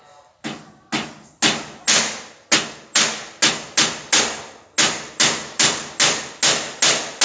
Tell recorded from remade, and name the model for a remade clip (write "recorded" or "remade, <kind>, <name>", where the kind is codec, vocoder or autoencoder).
recorded